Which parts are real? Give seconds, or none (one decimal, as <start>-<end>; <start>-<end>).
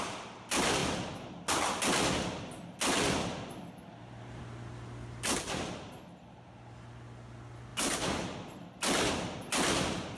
0.0-10.2